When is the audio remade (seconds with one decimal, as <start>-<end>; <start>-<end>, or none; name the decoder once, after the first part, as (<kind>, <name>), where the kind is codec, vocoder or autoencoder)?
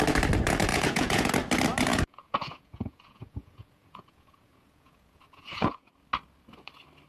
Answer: 0.7-1.3 (vocoder, Vocos); 1.9-5.9